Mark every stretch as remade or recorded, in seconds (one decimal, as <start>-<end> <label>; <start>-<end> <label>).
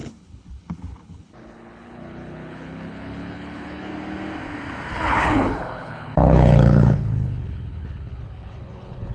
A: 0.0-3.9 remade; 3.9-4.9 recorded; 4.9-9.1 remade